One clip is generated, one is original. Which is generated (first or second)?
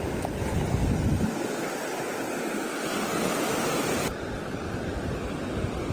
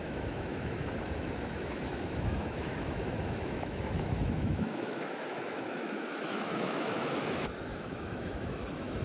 second